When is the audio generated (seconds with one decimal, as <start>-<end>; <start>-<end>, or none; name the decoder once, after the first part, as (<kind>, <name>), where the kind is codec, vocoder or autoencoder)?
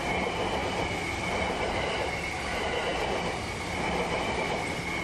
none